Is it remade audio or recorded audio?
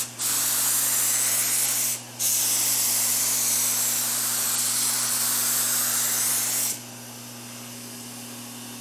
recorded